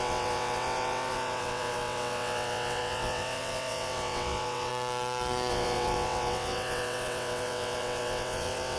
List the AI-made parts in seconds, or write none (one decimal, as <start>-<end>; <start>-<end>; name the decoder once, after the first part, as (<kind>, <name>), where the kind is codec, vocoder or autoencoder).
0.0-4.7 (vocoder, WaveNeXt); 5.5-8.8